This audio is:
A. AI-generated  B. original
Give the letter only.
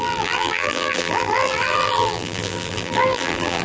A